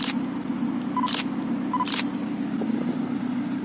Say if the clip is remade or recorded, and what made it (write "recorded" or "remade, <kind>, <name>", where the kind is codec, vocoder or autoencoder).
recorded